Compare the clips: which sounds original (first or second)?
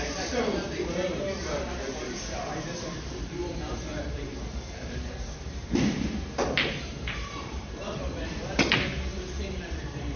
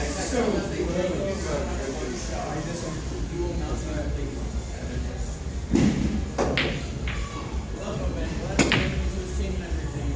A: second